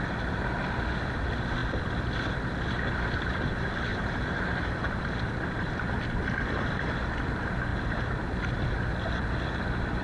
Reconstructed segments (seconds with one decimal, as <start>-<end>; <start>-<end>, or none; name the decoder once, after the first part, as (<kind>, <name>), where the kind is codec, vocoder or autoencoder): 3.9-4.5 (vocoder, BigVGAN v2)